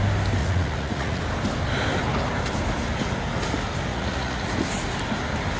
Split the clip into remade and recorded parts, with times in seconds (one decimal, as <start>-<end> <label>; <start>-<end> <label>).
0.0-0.4 recorded; 0.4-1.2 remade; 1.2-3.9 recorded; 3.9-4.5 remade; 4.5-5.6 recorded